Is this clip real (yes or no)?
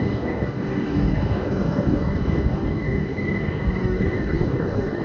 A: no